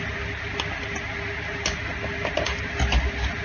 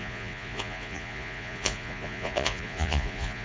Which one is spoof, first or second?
second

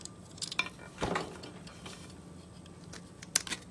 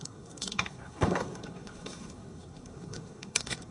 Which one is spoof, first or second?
second